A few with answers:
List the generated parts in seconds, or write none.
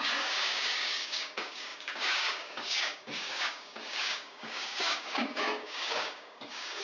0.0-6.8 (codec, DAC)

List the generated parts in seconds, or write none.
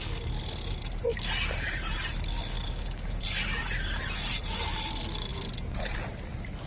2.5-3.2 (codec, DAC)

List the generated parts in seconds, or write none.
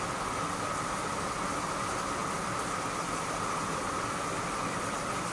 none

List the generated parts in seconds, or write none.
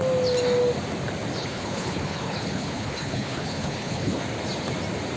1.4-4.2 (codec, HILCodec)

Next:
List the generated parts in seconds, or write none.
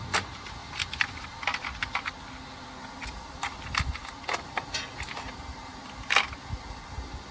0.6-4.0 (vocoder, BigVGAN v2)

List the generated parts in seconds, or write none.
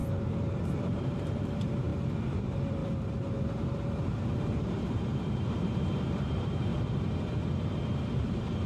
0.0-1.9 (vocoder, BigVGAN v2); 2.4-6.7; 8.2-8.7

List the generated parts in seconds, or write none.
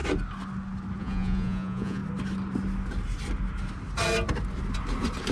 1.0-2.0 (vocoder, Vocos)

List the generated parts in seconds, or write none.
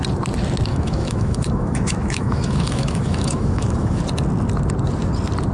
0.7-4.0 (autoencoder, DAC-VAE)